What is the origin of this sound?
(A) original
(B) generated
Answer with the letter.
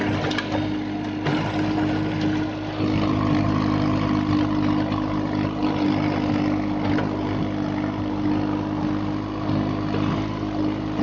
A